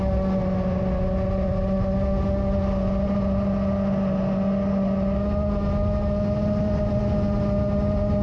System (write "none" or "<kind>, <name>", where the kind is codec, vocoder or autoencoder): none